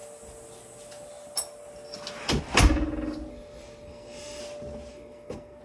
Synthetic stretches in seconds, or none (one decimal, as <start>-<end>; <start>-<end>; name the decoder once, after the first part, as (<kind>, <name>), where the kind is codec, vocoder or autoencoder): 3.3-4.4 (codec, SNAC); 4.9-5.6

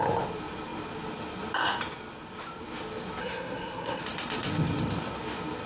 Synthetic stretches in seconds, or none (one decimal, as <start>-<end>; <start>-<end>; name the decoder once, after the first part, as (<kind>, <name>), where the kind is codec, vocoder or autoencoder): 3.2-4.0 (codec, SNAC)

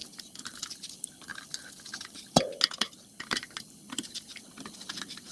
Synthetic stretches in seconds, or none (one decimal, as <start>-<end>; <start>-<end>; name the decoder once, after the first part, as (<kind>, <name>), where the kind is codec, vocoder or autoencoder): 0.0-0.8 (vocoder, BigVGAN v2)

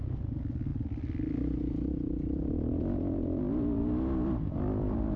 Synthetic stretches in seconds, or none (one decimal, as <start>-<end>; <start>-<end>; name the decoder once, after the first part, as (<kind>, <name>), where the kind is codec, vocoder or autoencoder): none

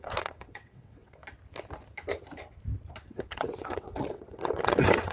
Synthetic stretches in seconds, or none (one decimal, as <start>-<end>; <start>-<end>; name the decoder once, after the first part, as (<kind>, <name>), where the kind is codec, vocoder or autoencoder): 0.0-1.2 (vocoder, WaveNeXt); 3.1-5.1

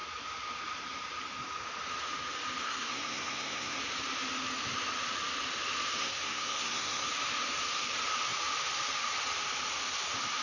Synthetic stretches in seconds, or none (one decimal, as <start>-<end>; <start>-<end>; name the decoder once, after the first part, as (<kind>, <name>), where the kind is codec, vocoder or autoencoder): 2.6-3.8 (codec, SNAC); 6.0-7.1

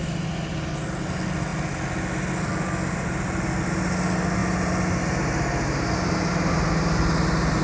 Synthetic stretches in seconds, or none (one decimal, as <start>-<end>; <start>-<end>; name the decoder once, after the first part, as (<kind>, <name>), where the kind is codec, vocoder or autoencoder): none